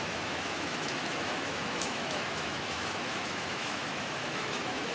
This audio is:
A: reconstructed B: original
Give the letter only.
A